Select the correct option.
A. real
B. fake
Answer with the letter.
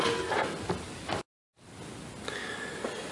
A